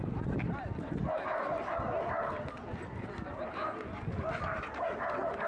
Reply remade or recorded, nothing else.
recorded